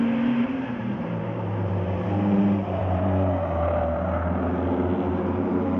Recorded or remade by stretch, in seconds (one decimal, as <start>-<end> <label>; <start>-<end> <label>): 0.0-2.8 remade; 2.8-5.1 recorded; 5.1-5.8 remade